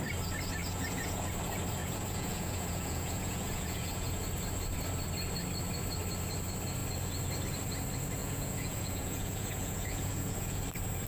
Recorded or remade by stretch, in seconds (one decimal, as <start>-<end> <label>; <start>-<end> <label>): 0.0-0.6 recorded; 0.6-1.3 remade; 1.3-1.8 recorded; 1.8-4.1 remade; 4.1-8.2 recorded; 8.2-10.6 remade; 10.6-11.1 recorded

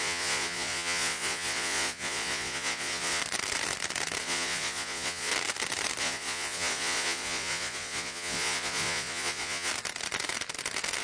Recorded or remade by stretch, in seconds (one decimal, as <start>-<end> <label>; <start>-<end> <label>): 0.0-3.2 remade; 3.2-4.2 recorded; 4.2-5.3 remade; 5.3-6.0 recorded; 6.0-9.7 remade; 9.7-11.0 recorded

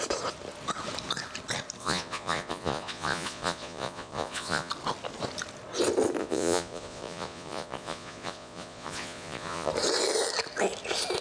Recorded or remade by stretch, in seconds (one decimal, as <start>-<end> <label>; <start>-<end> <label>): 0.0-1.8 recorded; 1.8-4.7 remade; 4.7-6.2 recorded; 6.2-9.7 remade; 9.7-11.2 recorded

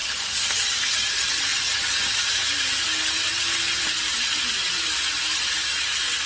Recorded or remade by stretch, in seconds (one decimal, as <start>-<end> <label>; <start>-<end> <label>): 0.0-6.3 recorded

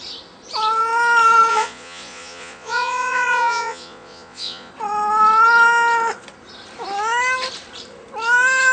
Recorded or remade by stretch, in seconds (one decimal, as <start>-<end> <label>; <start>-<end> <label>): 0.0-1.5 recorded; 1.5-4.7 remade; 4.7-8.7 recorded

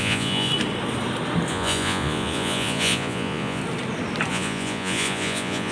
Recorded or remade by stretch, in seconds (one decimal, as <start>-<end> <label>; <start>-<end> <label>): 0.0-0.5 remade; 0.5-1.5 recorded; 1.5-3.6 remade; 3.6-4.3 recorded; 4.3-5.7 remade